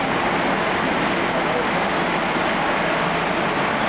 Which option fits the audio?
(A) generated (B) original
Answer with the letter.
B